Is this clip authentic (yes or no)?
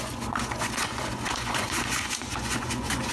no